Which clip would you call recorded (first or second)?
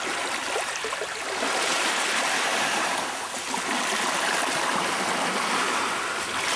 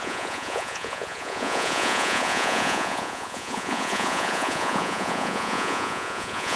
first